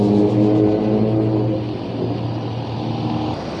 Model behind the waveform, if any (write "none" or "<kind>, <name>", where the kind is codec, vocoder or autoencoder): none